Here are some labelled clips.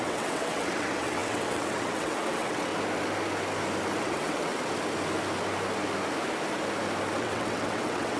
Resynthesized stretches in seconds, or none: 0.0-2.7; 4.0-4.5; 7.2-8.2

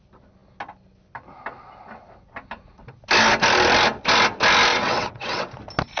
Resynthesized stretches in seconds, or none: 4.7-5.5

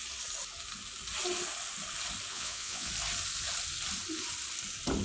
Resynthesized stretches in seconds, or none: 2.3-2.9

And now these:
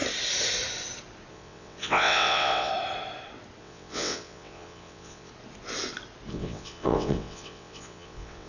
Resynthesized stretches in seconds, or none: 1.3-2.7; 3.6-5.3; 6.3-8.5

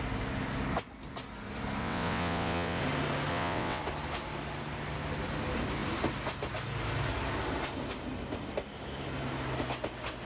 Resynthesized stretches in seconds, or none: 1.8-2.8; 3.3-3.8

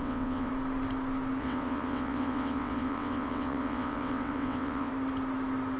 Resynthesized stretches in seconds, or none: 0.0-0.5; 1.4-4.9

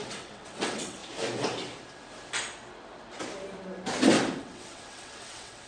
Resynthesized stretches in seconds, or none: 0.0-1.0; 4.4-5.7

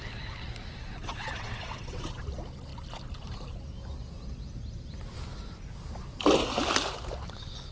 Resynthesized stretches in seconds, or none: 1.0-2.2